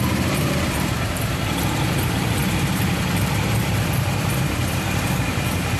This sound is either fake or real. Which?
fake